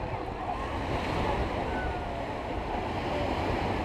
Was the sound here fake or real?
real